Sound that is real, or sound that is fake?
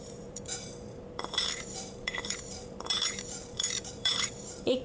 fake